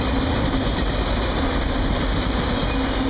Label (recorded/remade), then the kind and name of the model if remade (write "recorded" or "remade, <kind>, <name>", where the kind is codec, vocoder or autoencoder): recorded